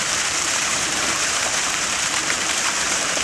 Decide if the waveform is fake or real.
fake